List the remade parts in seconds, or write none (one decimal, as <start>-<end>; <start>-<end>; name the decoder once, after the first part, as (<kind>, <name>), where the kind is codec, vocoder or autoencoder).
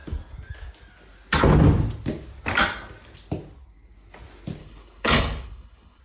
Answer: 4.6-6.0 (codec, HILCodec)